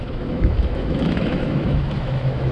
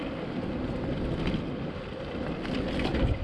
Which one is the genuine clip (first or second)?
second